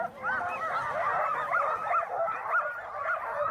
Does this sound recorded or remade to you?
recorded